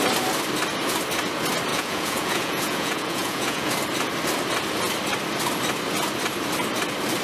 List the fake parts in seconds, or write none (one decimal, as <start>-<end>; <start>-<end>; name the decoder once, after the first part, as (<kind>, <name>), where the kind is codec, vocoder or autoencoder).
1.7-3.7 (vocoder, Vocos)